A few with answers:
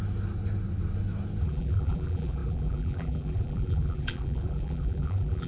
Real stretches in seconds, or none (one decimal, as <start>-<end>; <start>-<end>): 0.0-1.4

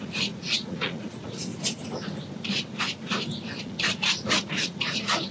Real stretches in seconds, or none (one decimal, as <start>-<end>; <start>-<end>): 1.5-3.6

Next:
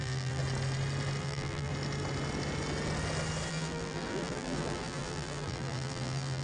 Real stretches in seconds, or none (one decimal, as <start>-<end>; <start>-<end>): 0.4-1.2; 1.7-3.5

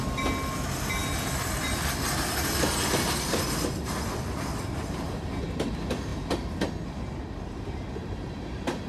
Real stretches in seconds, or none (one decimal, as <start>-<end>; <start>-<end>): 0.0-8.9

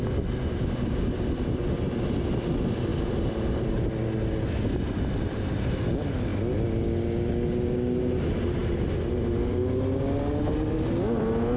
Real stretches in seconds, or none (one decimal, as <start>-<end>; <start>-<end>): 0.0-11.6